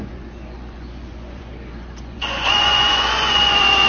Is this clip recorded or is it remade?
remade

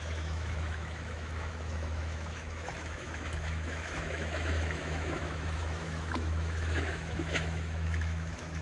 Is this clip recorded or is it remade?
remade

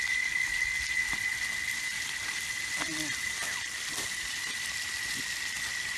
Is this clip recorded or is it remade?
recorded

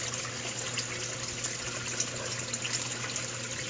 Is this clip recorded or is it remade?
recorded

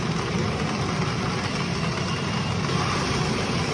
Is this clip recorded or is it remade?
recorded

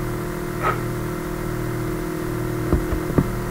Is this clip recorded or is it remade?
recorded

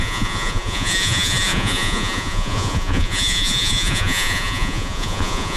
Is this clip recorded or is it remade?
remade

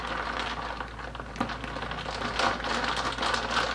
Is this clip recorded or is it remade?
recorded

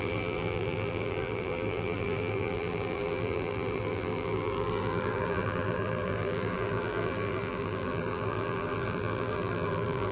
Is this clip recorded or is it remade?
remade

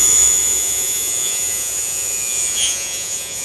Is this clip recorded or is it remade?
remade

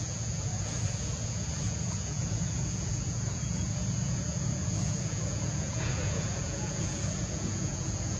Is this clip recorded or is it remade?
remade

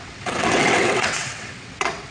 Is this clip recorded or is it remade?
remade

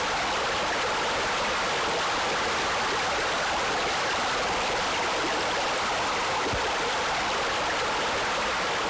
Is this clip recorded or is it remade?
recorded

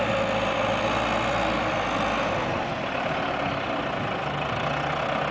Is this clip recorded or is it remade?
recorded